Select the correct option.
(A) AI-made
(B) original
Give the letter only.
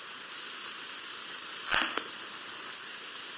B